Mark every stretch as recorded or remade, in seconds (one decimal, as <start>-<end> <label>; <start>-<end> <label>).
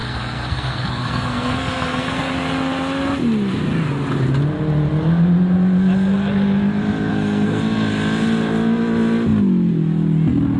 0.0-2.3 remade; 2.3-7.1 recorded; 7.1-7.6 remade; 7.6-10.6 recorded